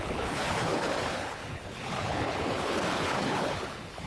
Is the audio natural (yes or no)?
no